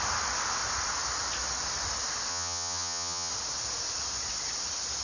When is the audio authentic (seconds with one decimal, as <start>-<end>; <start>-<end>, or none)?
0.0-2.3; 3.3-5.0